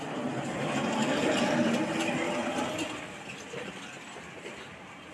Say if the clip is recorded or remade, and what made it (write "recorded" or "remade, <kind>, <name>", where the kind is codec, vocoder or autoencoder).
recorded